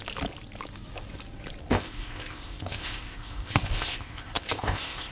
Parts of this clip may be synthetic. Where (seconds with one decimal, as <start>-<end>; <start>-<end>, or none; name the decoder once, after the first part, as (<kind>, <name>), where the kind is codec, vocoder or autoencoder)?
1.6-5.1 (codec, ZipCodec)